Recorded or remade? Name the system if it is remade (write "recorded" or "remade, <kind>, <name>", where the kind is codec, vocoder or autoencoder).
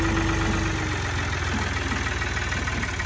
recorded